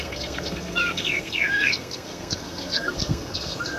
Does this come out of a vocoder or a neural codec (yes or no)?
yes